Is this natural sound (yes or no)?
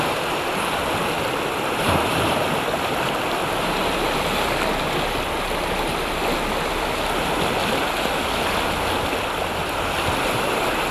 yes